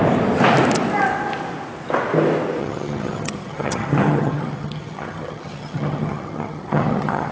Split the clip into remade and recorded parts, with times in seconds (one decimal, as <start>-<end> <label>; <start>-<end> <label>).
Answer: 0.0-2.6 recorded; 2.6-7.3 remade

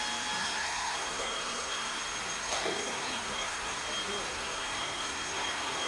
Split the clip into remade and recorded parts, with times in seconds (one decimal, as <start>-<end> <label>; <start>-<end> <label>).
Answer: 0.0-0.4 recorded; 0.4-2.0 remade; 2.0-2.4 recorded; 2.4-3.8 remade; 3.8-4.3 recorded; 4.3-5.9 remade

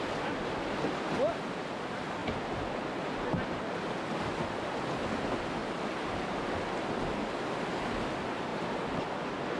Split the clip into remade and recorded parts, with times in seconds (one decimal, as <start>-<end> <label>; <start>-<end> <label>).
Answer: 0.0-5.6 recorded; 5.6-6.4 remade; 6.4-9.6 recorded

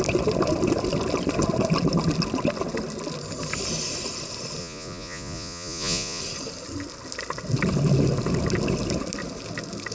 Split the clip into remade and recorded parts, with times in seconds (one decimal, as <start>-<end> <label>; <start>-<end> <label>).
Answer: 0.0-4.6 recorded; 4.6-6.2 remade; 6.2-9.9 recorded